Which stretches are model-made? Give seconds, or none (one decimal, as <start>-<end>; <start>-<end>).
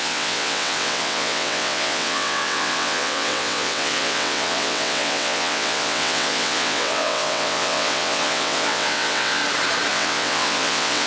0.0-9.4; 9.9-11.1